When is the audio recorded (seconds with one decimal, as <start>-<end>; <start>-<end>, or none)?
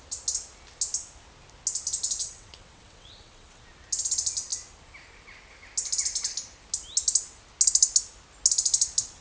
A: 0.0-2.2; 3.6-9.2